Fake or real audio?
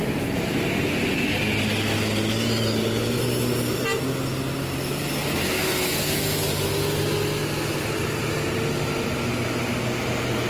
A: real